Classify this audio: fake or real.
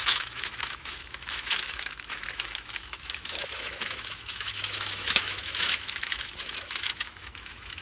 fake